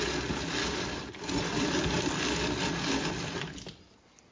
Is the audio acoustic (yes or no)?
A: yes